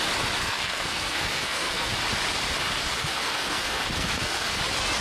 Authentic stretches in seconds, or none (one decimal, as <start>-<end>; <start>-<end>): 0.0-0.4; 1.9-3.0; 4.6-5.0

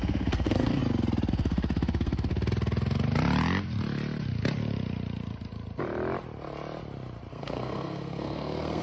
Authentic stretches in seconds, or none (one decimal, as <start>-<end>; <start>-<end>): 0.8-1.3; 2.3-7.3

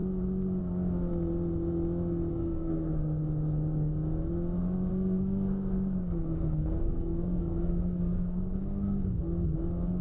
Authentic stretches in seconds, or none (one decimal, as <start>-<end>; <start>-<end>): 0.0-2.3; 3.2-4.9; 9.2-10.0